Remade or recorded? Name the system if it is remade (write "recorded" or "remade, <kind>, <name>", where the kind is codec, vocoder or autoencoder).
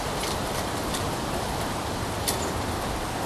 recorded